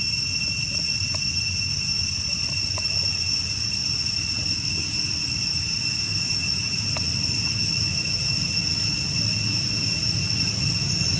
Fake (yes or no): no